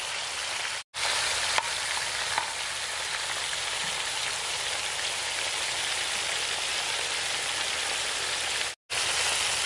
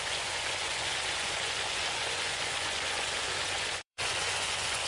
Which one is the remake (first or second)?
second